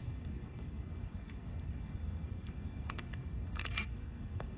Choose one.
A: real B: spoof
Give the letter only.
B